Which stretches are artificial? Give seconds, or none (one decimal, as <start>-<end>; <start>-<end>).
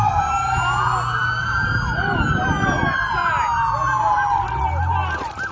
none